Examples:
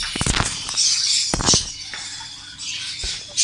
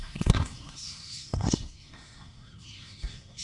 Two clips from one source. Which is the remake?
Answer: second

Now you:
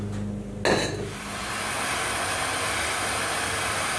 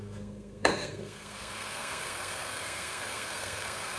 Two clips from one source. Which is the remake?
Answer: second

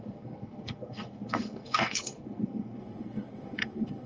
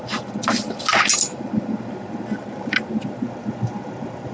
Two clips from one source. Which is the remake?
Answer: first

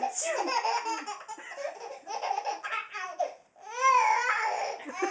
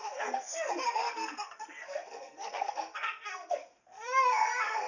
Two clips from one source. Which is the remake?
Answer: second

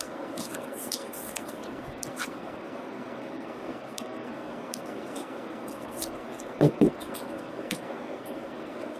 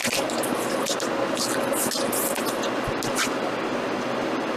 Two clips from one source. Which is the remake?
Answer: first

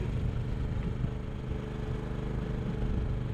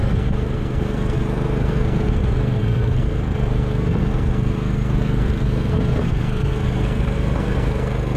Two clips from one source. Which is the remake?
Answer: second